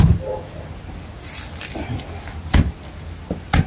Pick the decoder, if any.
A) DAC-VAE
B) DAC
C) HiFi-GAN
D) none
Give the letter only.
D